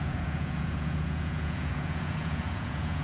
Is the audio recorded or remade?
remade